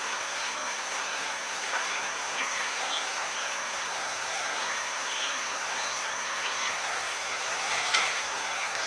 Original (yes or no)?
no